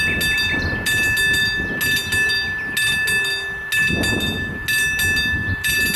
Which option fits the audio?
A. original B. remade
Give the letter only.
A